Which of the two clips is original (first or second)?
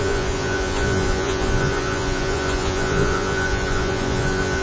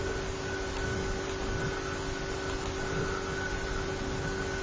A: second